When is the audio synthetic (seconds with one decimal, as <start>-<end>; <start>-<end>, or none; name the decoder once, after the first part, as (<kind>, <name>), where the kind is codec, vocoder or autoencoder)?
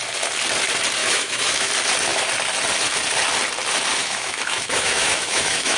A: 1.0-1.7 (autoencoder, DAC-VAE); 4.0-5.8